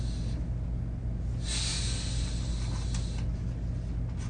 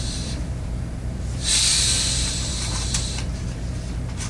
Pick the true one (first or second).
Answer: first